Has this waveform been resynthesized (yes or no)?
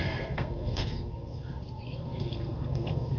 yes